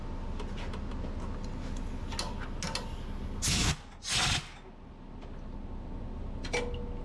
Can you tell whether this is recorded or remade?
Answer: recorded